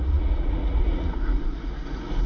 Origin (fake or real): fake